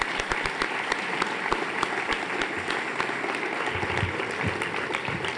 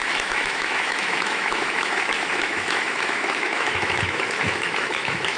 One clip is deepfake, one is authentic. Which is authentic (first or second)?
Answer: first